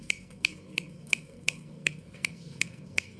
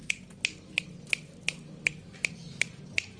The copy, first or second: first